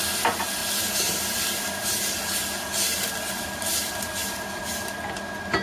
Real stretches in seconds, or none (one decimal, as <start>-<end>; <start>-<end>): 0.0-5.6

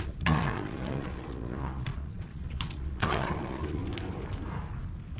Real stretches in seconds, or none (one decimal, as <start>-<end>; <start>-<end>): 3.8-5.2

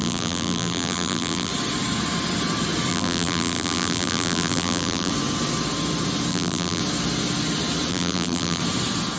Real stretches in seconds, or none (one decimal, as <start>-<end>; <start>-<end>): 1.5-2.9; 5.1-6.3; 6.8-7.9; 8.6-9.2

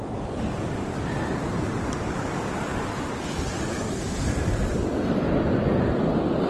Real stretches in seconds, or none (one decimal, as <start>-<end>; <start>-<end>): 0.0-6.5

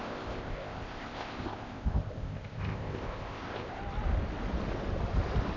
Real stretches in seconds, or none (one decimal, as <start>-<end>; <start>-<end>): 3.8-5.6

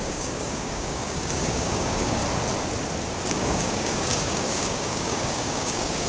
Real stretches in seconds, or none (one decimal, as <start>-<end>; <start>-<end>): 2.2-3.3

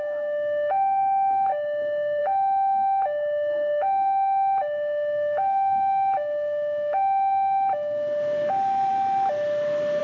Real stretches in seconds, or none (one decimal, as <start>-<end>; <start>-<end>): none